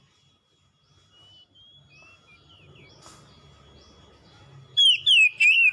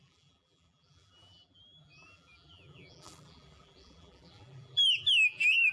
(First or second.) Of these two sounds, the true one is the first